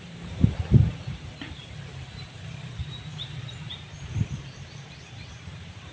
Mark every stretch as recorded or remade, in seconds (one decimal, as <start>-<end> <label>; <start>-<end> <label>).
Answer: 0.0-5.9 remade